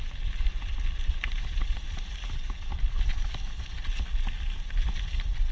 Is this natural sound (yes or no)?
yes